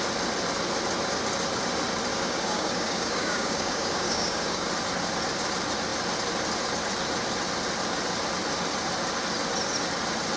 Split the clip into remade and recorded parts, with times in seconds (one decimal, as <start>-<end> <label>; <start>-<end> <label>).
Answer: 0.0-2.1 recorded; 2.1-4.7 remade; 4.7-10.4 recorded